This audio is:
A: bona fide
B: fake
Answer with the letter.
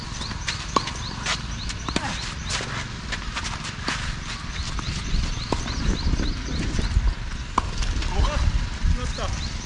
A